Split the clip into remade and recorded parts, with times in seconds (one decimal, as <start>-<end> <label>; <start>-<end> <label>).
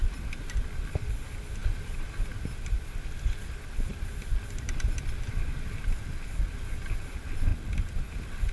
0.0-8.5 recorded